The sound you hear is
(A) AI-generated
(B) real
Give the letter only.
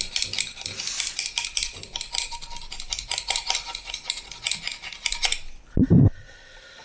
B